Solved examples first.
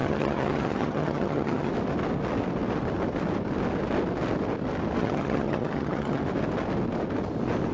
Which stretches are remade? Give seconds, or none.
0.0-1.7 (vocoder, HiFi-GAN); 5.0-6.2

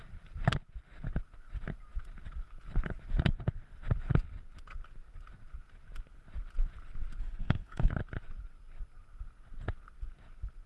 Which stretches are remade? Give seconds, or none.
7.2-7.9 (codec, DAC)

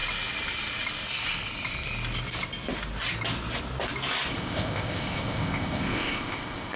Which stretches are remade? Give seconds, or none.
4.3-6.8 (codec, ZipCodec)

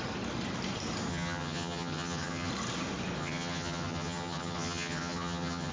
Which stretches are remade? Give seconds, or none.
1.1-2.5 (vocoder, HiFi-GAN); 3.2-5.7

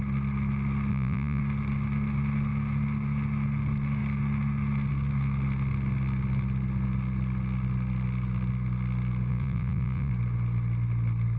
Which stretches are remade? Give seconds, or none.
0.9-1.4 (vocoder, Vocos); 9.3-10.1

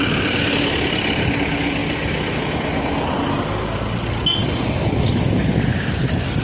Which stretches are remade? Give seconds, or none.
none